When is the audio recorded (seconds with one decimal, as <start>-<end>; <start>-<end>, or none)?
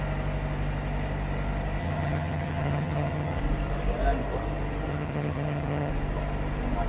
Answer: 0.0-1.8; 3.4-4.9; 5.9-6.9